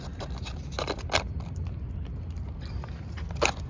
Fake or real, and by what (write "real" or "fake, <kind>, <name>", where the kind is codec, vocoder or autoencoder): real